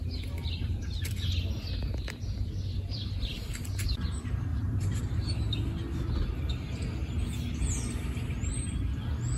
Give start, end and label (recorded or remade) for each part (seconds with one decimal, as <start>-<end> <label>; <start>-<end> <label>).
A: 0.0-4.5 recorded; 4.5-5.0 remade; 5.0-9.4 recorded